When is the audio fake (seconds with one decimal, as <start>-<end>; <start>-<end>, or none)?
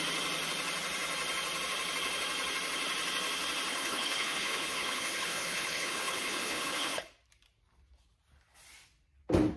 3.7-7.1